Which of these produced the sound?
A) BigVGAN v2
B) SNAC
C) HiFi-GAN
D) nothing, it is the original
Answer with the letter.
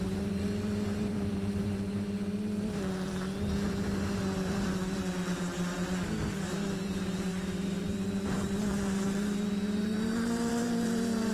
A